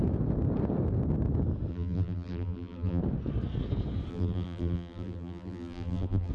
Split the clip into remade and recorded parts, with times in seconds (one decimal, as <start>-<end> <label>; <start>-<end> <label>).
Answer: 0.0-1.7 recorded; 1.7-3.0 remade; 3.0-4.1 recorded; 4.1-6.3 remade